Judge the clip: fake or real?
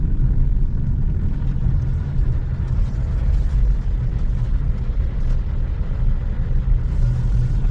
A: real